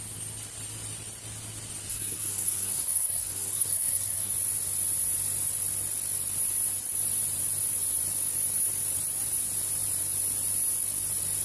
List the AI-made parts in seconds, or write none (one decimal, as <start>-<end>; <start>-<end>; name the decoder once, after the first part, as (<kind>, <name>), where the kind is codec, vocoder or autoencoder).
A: 1.9-4.3 (codec, SNAC)